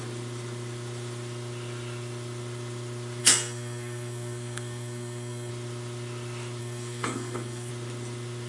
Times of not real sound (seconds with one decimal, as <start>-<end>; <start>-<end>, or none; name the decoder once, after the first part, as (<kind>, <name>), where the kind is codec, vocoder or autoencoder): 3.2-5.5 (codec, SNAC); 6.6-7.7